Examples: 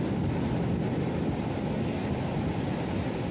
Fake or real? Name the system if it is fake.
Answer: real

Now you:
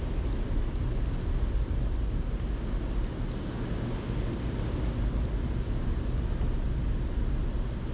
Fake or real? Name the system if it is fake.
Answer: real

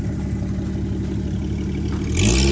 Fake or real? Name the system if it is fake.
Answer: real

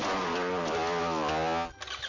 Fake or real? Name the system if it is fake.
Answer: real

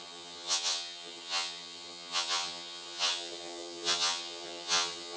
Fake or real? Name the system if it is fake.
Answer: fake, vocoder, HiFi-GAN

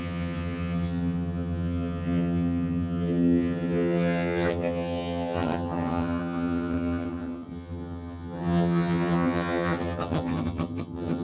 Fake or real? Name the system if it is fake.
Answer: fake, vocoder, HiFi-GAN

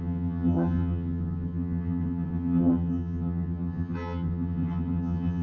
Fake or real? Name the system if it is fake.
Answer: fake, vocoder, HiFi-GAN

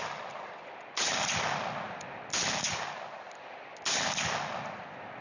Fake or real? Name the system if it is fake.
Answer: real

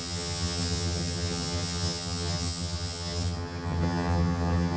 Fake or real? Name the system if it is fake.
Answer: fake, vocoder, HiFi-GAN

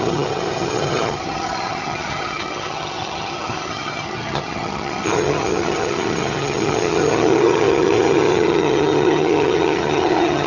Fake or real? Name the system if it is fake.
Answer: fake, vocoder, HiFi-GAN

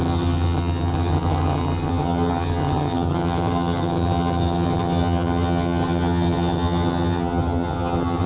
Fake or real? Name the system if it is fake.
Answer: fake, vocoder, HiFi-GAN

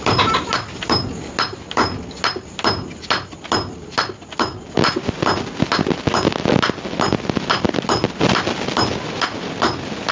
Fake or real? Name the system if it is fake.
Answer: real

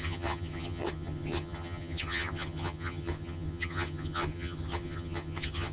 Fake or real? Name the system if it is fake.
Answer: fake, vocoder, HiFi-GAN